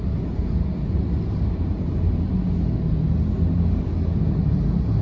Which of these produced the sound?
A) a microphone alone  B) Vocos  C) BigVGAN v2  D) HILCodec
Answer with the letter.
A